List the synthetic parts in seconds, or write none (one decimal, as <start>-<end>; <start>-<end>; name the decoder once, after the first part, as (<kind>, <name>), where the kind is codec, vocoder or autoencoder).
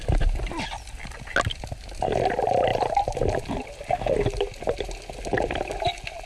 none